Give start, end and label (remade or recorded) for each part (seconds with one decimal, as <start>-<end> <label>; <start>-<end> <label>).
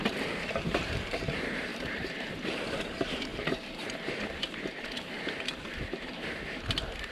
0.0-7.1 remade